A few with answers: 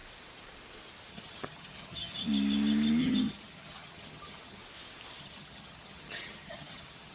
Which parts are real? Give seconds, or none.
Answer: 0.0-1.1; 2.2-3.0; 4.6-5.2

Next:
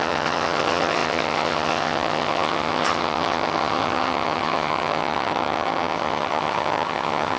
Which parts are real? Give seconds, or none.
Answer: none

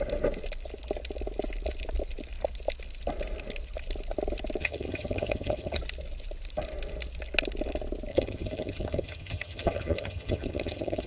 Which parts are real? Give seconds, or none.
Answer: 0.0-4.6; 5.8-8.1

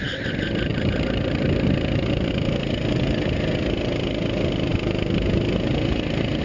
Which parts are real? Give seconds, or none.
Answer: 0.0-6.4

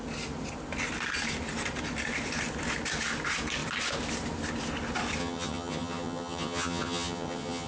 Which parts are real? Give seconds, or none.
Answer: 0.0-5.2

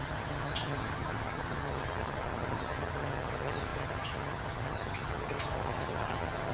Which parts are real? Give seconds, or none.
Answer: none

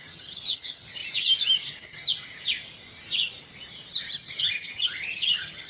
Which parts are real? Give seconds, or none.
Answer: 1.0-4.4